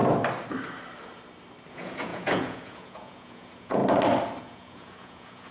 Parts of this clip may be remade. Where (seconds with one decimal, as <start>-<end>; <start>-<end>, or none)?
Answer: 1.7-3.8; 4.4-5.5